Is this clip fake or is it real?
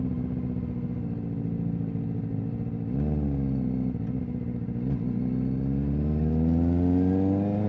real